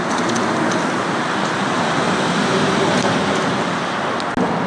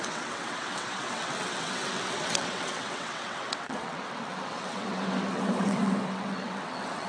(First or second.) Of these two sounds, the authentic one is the first